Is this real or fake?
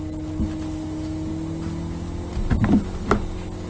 real